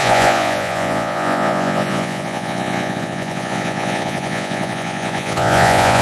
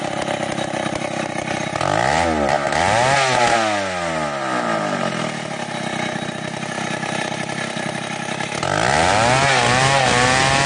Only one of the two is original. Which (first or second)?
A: second